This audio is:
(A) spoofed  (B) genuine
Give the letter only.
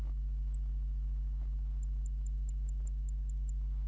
B